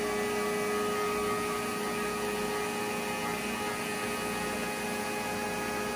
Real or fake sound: real